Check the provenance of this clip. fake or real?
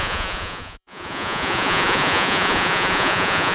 fake